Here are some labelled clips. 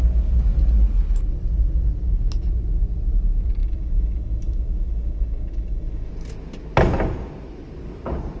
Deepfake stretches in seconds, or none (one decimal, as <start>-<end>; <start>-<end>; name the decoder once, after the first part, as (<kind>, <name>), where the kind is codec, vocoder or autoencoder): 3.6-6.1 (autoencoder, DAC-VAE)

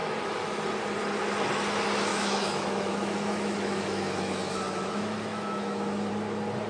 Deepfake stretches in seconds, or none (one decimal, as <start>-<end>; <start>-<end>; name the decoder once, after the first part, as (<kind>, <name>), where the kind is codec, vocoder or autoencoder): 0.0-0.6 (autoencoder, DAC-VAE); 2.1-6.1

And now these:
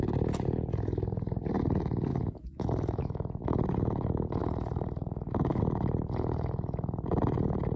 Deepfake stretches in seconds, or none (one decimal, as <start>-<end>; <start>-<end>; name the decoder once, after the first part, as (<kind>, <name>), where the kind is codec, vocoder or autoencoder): 2.1-3.0 (autoencoder, DAC-VAE); 4.4-5.6

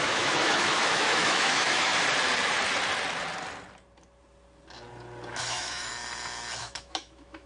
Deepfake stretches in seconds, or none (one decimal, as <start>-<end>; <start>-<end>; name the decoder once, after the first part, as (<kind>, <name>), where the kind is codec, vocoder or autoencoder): 0.0-1.9 (autoencoder, DAC-VAE); 5.3-5.9; 6.6-7.5